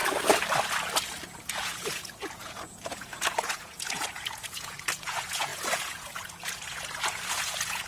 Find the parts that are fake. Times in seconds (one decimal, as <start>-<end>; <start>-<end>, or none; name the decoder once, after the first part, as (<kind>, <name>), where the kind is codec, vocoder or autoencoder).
1.5-7.9 (vocoder, Vocos)